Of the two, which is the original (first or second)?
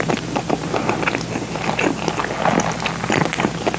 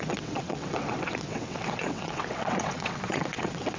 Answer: first